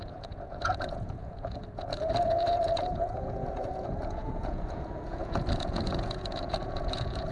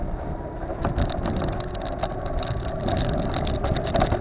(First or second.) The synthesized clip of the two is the first